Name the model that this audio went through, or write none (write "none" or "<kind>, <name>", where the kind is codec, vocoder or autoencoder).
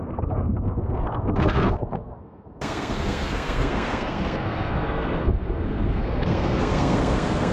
codec, SNAC